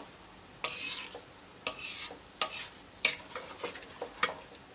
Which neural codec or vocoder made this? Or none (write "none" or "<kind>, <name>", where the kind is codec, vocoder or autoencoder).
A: none